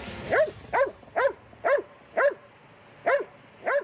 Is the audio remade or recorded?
recorded